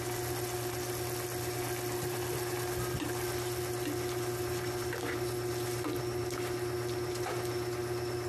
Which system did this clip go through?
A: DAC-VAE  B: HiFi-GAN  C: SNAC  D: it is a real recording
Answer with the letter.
D